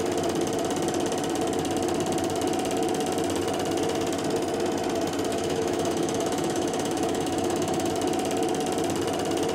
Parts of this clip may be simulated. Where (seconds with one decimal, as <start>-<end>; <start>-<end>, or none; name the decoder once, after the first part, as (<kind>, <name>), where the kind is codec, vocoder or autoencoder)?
5.3-7.9 (autoencoder, DAC-VAE)